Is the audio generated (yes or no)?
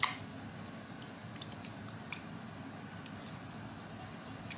no